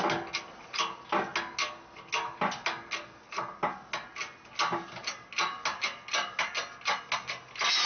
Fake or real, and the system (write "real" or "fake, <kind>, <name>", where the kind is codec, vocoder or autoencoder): real